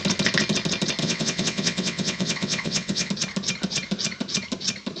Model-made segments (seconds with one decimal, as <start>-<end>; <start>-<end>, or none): 1.0-3.1